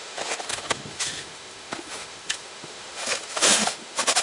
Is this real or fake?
fake